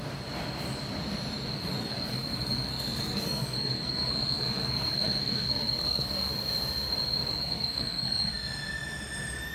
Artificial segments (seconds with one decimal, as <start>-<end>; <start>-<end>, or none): 1.8-6.3; 7.3-8.3